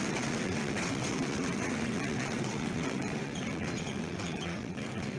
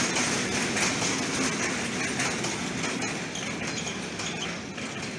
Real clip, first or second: second